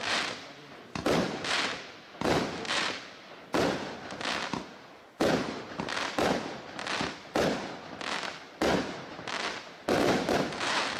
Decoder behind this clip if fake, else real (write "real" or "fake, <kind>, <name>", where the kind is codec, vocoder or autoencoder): real